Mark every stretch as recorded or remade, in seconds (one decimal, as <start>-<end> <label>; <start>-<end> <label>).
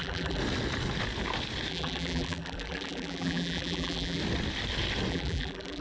0.0-0.4 remade; 0.4-1.7 recorded; 1.7-4.2 remade; 4.2-5.1 recorded; 5.1-5.8 remade